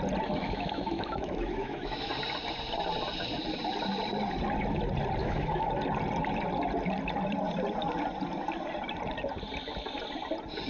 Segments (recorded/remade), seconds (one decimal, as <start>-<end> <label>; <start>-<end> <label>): 0.0-0.4 recorded; 0.4-2.1 remade; 2.1-5.2 recorded; 5.2-5.7 remade; 5.7-10.7 recorded